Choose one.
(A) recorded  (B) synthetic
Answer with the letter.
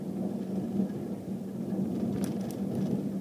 A